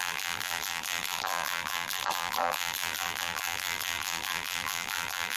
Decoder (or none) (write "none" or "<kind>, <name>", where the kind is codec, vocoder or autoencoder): vocoder, BigVGAN v2